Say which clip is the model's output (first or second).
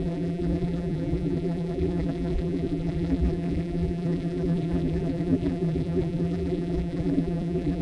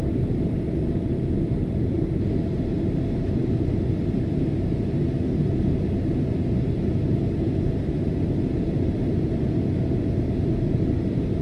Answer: first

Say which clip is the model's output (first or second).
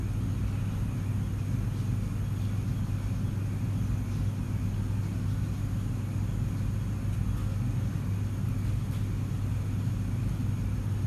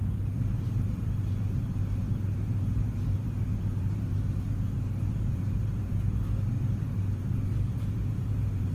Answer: second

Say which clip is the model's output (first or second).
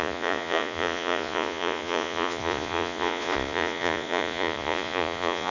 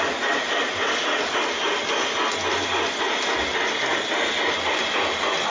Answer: first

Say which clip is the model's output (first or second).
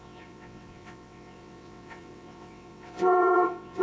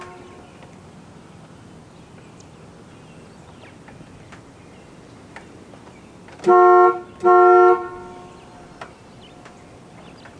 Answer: first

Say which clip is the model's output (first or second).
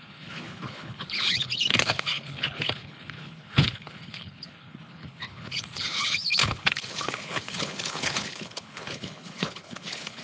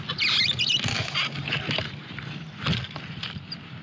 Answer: first